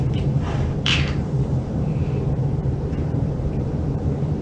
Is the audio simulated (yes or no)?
yes